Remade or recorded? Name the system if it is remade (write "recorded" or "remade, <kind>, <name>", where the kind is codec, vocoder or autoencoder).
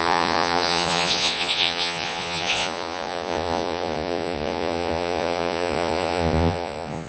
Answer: remade, vocoder, Vocos